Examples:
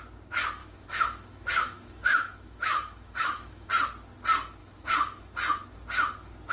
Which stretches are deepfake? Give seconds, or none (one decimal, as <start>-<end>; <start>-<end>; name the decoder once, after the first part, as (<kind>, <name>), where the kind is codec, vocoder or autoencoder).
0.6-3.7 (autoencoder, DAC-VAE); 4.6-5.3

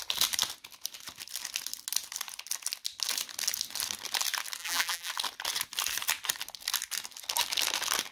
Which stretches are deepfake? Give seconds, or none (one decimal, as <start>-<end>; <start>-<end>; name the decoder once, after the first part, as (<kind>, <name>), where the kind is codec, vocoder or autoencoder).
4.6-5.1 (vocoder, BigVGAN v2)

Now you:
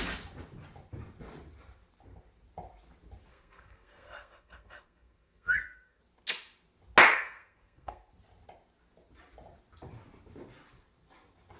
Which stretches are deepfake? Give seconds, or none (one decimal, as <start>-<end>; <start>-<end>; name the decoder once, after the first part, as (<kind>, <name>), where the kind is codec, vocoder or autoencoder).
3.3-6.0 (codec, SNAC); 7.1-8.1

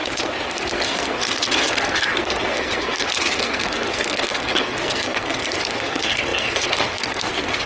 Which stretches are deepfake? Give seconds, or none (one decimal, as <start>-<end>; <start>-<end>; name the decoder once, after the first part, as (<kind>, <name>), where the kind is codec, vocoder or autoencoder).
0.0-7.7 (codec, SNAC)

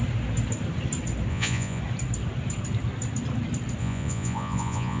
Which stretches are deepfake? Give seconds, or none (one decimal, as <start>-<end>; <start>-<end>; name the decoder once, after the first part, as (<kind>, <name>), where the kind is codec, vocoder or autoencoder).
1.3-1.8 (vocoder, Vocos); 3.8-5.0